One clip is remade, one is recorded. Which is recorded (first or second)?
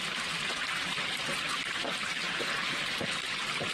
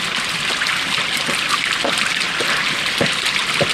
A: second